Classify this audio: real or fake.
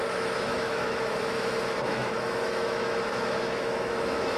fake